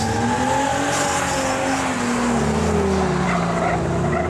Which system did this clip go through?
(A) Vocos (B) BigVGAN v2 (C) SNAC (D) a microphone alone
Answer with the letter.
D